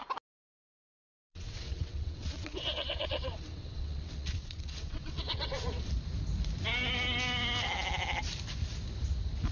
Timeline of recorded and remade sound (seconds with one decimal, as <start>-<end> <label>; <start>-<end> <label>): 0.0-1.1 recorded; 1.1-5.9 remade; 5.9-9.5 recorded